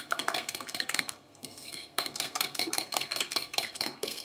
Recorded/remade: remade